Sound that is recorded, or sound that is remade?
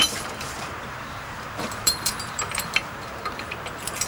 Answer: remade